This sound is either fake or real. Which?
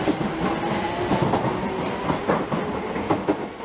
real